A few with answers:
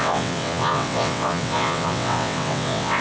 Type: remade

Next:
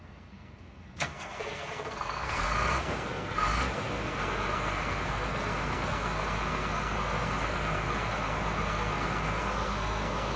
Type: remade